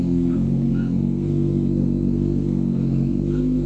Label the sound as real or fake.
fake